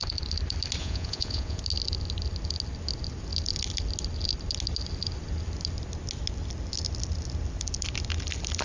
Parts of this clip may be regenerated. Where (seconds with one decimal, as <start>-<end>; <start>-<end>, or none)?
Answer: 0.8-1.6